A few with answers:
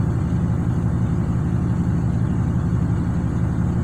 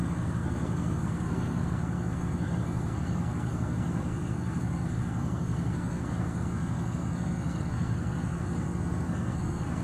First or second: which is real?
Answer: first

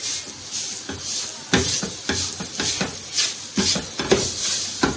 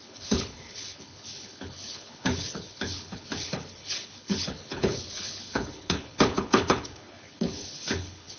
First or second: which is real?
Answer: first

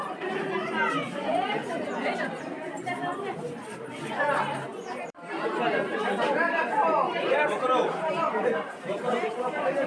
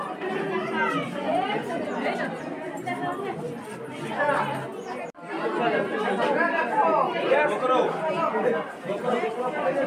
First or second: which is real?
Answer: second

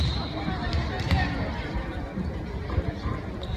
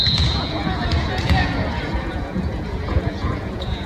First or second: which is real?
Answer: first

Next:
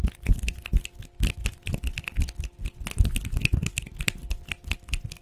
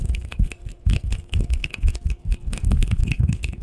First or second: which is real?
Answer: first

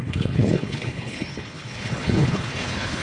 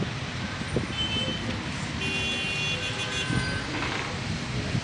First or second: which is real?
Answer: second